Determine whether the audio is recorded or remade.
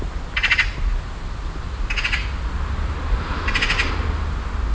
recorded